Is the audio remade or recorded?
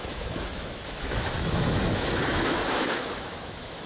remade